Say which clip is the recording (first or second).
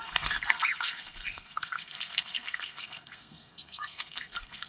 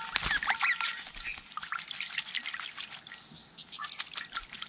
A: second